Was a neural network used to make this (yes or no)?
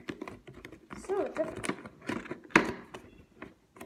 no